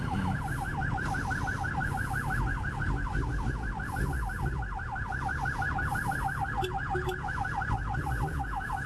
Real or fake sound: real